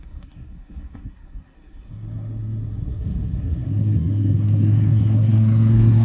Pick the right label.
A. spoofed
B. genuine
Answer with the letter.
A